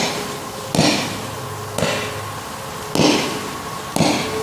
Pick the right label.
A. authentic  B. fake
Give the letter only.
A